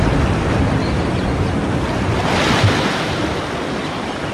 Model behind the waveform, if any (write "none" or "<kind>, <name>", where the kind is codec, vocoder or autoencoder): none